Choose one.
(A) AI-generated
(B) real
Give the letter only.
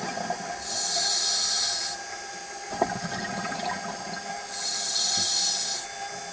B